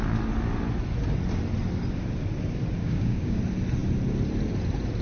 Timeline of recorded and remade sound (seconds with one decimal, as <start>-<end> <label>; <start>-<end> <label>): 0.0-2.8 recorded; 2.8-3.4 remade; 3.4-5.0 recorded